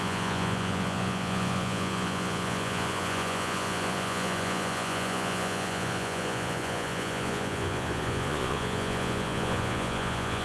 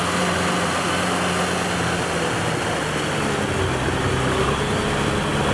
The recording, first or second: second